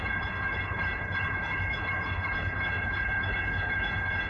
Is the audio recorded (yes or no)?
no